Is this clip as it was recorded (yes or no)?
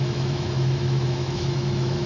no